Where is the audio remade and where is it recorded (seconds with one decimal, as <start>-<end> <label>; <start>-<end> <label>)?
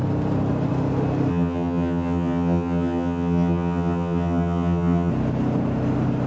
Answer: 0.0-1.3 recorded; 1.3-5.1 remade; 5.1-6.3 recorded